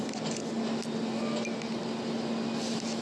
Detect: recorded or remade recorded